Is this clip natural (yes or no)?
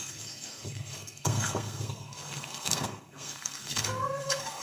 no